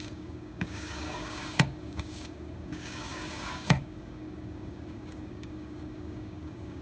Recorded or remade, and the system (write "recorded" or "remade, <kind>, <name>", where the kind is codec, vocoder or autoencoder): remade, codec, DAC